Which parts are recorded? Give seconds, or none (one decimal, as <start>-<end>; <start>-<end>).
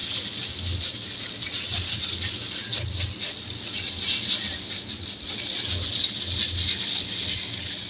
0.0-7.9